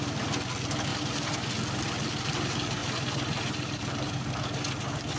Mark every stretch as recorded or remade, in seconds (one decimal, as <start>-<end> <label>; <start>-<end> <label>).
0.0-0.9 recorded; 0.9-1.5 remade; 1.5-2.8 recorded; 2.8-4.4 remade; 4.4-5.2 recorded